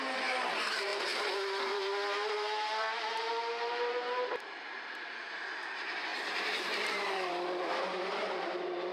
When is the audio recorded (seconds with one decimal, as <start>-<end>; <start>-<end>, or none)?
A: none